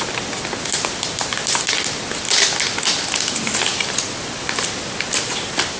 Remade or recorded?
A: recorded